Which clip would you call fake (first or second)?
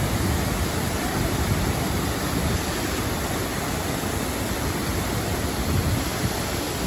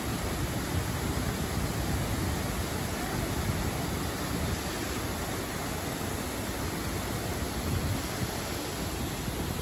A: first